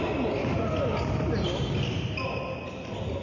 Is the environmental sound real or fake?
real